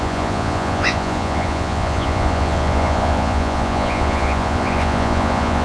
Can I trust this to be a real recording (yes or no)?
no